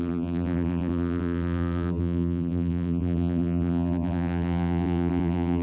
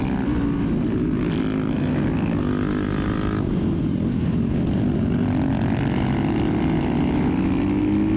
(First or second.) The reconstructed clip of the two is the first